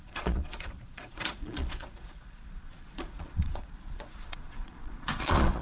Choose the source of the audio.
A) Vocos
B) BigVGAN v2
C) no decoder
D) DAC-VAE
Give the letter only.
A